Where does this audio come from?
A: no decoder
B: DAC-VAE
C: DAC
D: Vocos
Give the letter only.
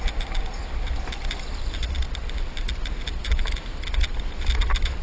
A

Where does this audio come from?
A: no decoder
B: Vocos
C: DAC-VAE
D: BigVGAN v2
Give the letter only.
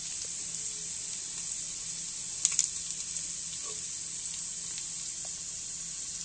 A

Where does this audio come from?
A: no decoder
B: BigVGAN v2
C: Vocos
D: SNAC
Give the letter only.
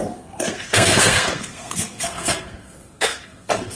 D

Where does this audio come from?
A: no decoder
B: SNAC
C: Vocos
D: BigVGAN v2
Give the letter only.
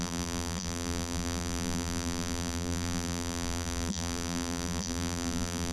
D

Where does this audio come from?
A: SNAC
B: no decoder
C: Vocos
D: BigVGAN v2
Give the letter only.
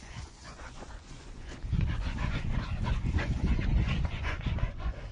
C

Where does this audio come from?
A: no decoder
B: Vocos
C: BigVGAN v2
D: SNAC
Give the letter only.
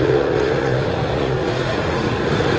B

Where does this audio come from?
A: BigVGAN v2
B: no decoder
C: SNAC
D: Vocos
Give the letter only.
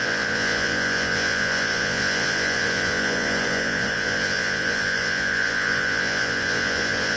D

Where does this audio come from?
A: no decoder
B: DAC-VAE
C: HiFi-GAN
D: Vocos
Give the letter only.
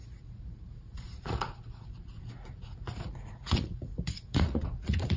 D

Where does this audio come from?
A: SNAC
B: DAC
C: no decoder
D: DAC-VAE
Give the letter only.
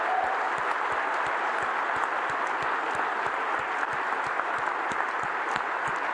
C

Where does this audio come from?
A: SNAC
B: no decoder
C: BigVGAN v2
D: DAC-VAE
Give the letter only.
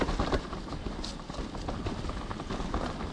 B